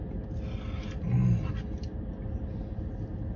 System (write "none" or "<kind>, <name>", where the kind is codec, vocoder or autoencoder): none